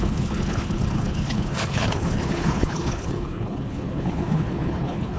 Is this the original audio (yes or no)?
no